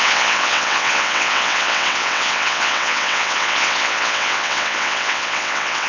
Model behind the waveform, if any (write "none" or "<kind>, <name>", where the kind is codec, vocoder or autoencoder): vocoder, WaveNeXt